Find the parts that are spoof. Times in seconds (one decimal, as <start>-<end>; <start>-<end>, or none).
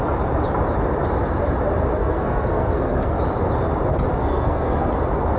2.0-3.2; 4.2-4.9